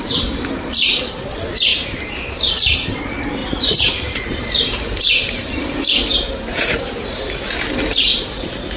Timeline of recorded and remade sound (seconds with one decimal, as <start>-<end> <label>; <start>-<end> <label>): 0.0-1.7 recorded; 1.7-2.9 remade; 2.9-3.4 recorded; 3.4-7.3 remade; 7.3-8.8 recorded